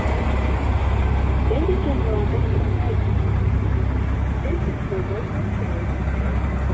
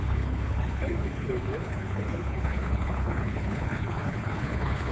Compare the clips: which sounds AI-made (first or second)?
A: second